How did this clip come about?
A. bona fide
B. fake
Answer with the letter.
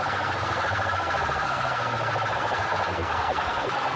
B